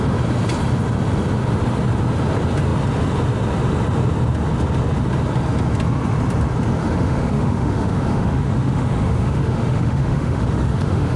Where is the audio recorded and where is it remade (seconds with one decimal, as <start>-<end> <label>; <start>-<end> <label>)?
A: 0.0-6.8 recorded; 6.8-11.2 remade